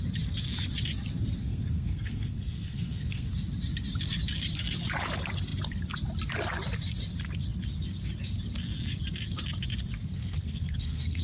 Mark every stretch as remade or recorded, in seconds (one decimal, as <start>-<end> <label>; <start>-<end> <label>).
0.0-1.4 recorded; 1.4-3.3 remade; 3.3-10.1 recorded; 10.1-11.2 remade